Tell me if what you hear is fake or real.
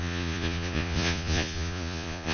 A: fake